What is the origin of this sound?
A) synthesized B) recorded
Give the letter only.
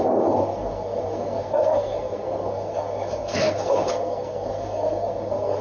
A